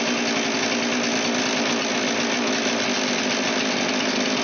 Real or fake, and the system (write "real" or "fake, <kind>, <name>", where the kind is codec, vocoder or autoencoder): real